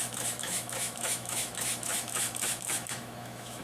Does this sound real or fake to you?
fake